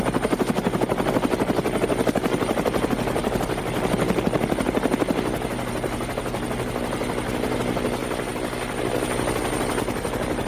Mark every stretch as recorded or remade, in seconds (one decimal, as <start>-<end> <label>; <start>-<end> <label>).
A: 0.0-10.5 recorded